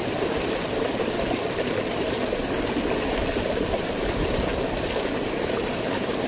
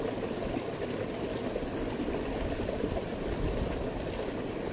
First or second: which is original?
second